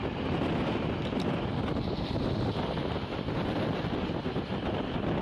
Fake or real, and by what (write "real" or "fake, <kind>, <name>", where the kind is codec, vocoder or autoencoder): real